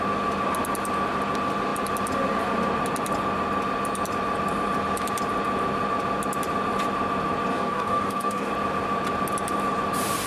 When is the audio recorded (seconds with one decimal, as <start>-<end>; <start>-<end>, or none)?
0.0-7.5; 8.5-10.3